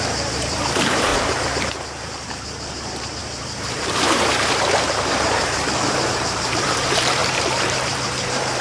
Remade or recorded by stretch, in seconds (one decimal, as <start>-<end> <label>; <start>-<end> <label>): 0.0-1.1 remade; 1.1-2.0 recorded; 2.0-8.6 remade